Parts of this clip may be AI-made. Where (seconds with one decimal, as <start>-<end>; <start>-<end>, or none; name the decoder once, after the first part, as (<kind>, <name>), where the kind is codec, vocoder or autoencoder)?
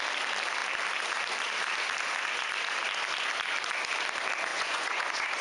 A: 4.5-5.4 (vocoder, Vocos)